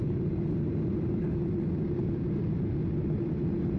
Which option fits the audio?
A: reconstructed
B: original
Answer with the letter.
B